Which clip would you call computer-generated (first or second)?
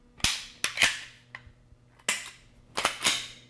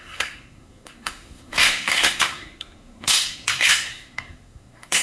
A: second